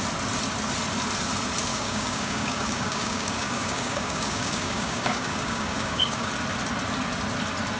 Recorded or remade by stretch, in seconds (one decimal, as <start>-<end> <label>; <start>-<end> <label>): 0.0-1.7 recorded; 1.7-6.3 remade; 6.3-7.8 recorded